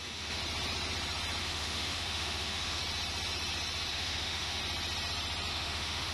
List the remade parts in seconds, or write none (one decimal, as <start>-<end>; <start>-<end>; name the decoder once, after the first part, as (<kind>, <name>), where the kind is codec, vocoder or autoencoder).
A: 0.0-0.4 (autoencoder, DAC-VAE); 1.4-2.8; 3.9-4.6; 5.5-6.1